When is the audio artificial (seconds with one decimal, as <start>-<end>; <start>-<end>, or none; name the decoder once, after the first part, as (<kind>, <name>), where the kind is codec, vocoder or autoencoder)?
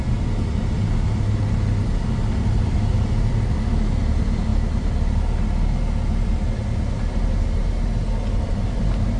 none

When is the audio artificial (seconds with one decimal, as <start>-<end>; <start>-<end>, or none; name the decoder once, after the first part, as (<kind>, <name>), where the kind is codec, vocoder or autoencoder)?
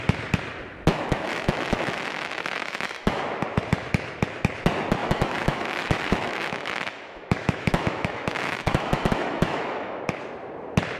0.9-3.2 (autoencoder, DAC-VAE); 5.0-10.0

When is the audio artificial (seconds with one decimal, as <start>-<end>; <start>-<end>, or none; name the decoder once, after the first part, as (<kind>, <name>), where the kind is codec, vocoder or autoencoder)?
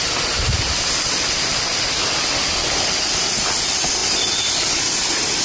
none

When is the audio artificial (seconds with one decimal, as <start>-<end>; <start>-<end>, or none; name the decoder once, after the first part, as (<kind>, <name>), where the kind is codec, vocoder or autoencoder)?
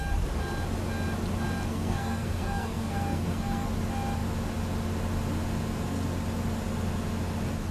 1.7-3.7 (codec, SNAC)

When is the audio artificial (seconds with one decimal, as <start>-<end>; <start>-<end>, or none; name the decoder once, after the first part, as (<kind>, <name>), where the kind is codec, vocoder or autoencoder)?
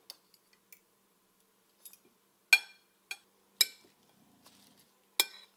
none